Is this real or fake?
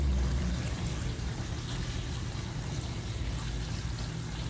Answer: real